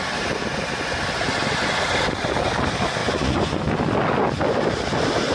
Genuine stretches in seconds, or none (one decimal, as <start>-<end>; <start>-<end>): 0.0-3.0; 3.6-5.3